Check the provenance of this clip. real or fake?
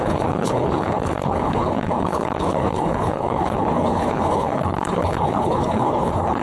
fake